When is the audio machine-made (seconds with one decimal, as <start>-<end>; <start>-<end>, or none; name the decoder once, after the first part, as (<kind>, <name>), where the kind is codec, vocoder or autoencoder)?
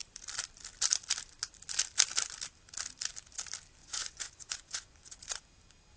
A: 3.8-5.4 (vocoder, Vocos)